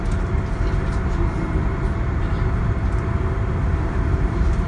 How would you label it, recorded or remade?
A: remade